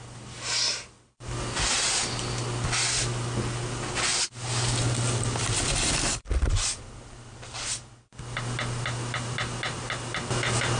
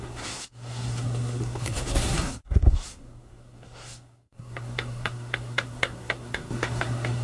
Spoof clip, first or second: second